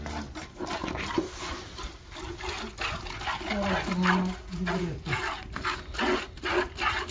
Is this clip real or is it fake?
real